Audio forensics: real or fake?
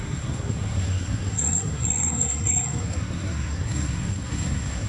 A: fake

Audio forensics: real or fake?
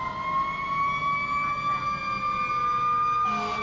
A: real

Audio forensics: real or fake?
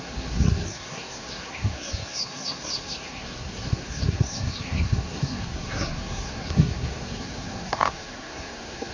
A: fake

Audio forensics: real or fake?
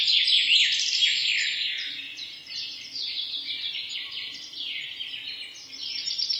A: real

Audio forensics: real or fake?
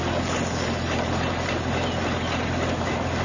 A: real